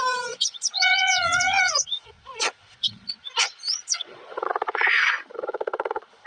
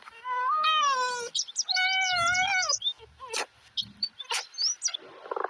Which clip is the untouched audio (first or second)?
second